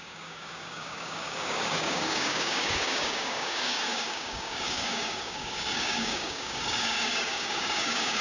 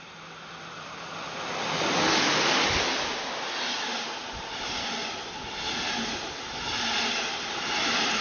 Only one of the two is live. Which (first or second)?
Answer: second